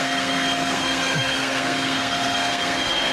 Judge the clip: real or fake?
fake